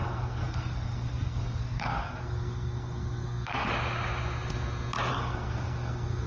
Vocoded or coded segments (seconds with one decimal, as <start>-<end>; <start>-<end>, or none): 0.0-3.7; 5.1-6.3